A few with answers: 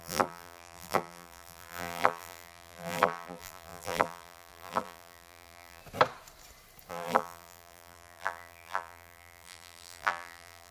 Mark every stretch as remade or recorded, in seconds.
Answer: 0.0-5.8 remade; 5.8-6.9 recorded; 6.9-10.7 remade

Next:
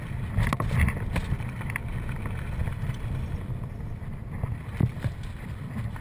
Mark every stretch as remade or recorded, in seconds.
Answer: 0.0-2.6 recorded; 2.6-3.8 remade; 3.8-4.8 recorded; 4.8-6.0 remade

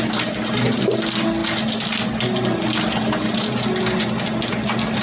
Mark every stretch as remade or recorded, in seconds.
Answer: 0.0-5.0 recorded

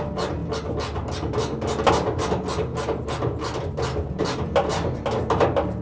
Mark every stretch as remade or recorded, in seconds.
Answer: 0.0-5.8 recorded

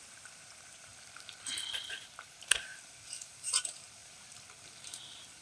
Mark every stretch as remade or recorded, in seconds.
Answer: 0.0-0.9 remade; 0.9-1.9 recorded; 1.9-2.7 remade; 2.7-3.3 recorded; 3.3-4.0 remade; 4.0-4.8 recorded; 4.8-5.4 remade

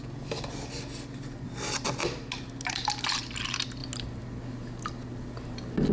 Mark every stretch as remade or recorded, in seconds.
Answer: 0.0-5.9 recorded

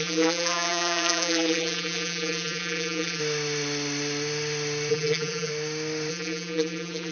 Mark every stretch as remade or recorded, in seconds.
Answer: 0.0-3.2 remade; 3.2-4.9 recorded; 4.9-5.5 remade; 5.5-6.1 recorded; 6.1-7.1 remade